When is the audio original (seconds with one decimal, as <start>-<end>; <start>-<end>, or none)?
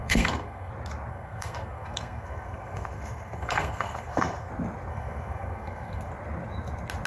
0.7-1.1; 4.5-4.9; 6.1-7.1